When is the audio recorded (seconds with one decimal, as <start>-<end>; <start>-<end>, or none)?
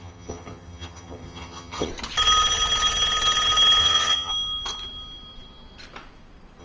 1.9-3.8; 4.3-6.6